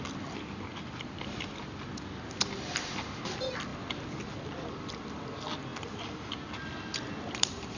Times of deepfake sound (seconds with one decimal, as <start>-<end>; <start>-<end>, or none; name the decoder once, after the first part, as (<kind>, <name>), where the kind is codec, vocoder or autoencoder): none